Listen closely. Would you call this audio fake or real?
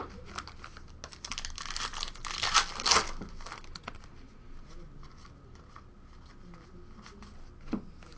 real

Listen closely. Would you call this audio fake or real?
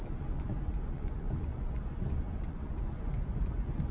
fake